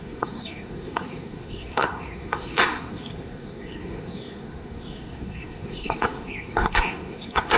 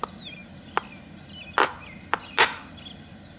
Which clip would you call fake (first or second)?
first